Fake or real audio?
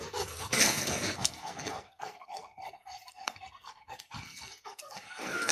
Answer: fake